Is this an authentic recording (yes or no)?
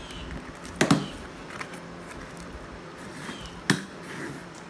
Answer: yes